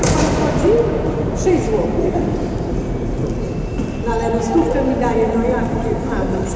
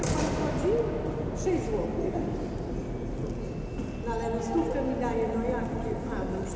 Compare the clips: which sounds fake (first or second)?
first